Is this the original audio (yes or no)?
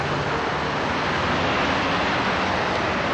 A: yes